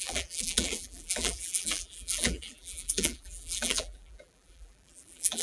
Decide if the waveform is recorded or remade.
remade